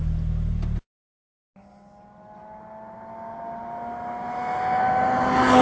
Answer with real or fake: real